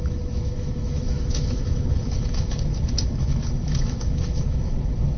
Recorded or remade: remade